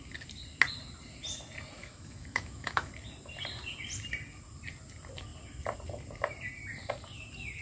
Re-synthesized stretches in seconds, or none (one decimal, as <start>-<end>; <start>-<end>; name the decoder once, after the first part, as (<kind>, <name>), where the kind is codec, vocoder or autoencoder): 1.8-2.9 (autoencoder, DAC-VAE)